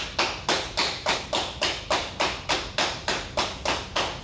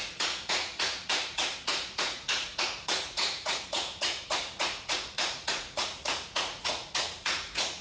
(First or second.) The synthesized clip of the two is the second